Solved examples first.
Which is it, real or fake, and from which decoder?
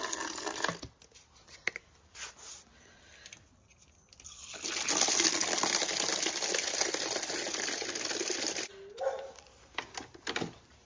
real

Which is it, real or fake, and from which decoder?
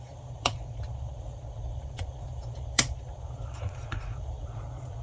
fake, vocoder, Vocos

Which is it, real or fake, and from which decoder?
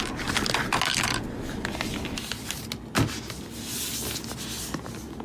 real